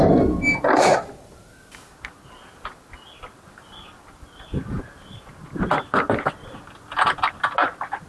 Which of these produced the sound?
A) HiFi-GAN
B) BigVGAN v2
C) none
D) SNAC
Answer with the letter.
C